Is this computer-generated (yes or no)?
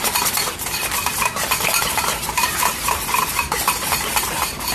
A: yes